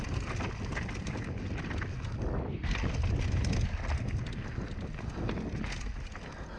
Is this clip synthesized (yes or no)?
no